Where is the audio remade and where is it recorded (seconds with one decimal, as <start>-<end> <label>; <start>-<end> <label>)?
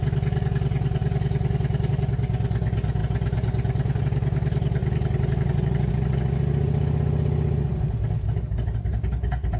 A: 0.0-9.6 recorded